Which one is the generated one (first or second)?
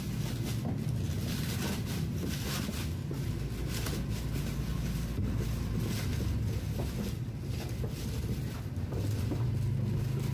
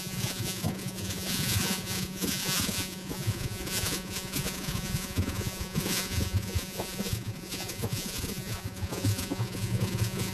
second